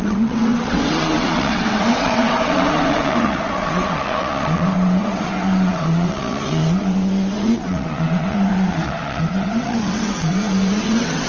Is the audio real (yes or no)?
no